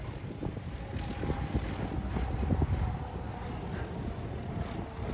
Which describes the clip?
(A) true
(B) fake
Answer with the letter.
A